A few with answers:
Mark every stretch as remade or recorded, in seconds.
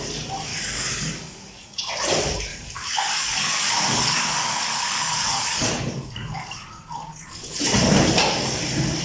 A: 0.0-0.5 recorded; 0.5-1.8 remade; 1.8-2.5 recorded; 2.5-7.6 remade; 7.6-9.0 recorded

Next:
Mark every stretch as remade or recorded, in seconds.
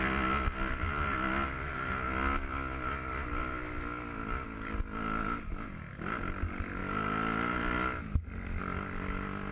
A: 0.0-9.5 recorded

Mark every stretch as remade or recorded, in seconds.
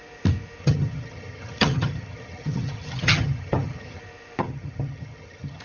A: 0.0-0.6 recorded; 0.6-4.0 remade; 4.0-4.4 recorded; 4.4-5.6 remade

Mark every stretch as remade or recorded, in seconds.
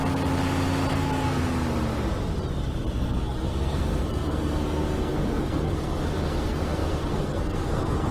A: 0.0-0.9 recorded; 0.9-1.4 remade; 1.4-2.9 recorded; 2.9-8.1 remade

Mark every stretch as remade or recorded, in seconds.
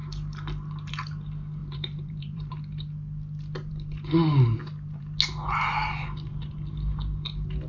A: 0.0-1.6 recorded; 1.6-2.5 remade; 2.5-7.7 recorded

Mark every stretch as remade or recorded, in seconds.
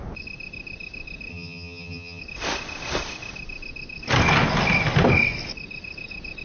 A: 0.0-1.3 recorded; 1.3-2.2 remade; 2.2-6.4 recorded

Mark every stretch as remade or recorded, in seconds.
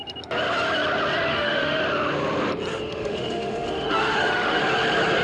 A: 0.0-1.3 recorded; 1.3-1.8 remade; 1.8-2.7 recorded; 2.7-4.6 remade; 4.6-5.2 recorded